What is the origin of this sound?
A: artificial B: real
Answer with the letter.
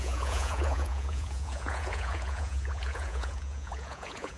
A